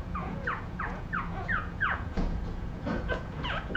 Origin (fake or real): fake